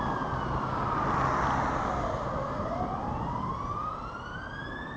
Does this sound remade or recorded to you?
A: recorded